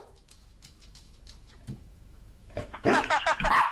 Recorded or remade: remade